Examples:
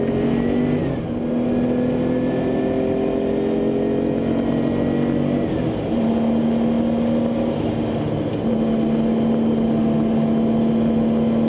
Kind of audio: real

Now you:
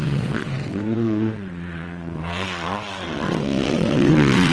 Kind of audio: fake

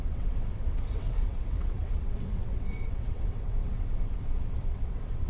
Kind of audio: fake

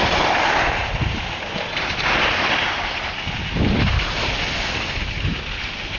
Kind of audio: real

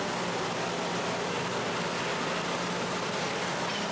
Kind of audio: real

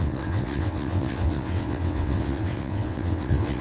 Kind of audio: fake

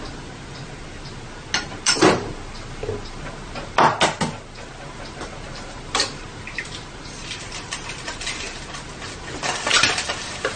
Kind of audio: real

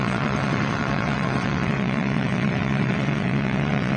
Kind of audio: fake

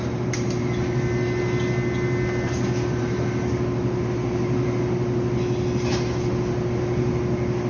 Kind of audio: real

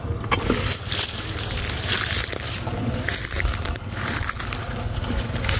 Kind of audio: real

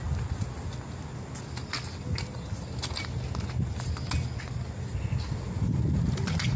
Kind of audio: real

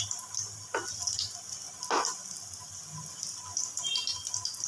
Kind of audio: real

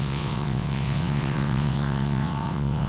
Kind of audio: fake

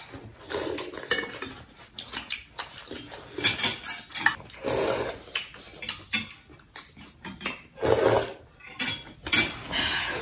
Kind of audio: real